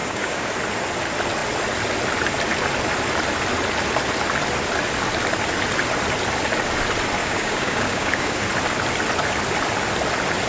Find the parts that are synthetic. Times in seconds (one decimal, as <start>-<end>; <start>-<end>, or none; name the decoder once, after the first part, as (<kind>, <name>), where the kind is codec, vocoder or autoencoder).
0.0-0.5 (codec, DAC); 7.2-8.4